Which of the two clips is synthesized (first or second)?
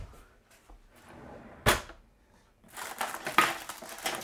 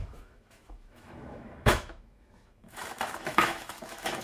second